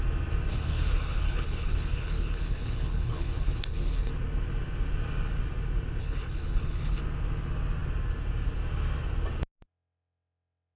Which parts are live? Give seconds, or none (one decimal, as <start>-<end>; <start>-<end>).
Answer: 0.0-0.5; 4.1-6.0; 7.0-10.8